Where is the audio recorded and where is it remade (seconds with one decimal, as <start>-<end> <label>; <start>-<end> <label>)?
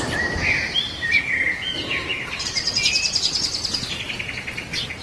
0.0-5.0 recorded